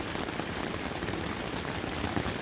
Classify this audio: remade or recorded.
recorded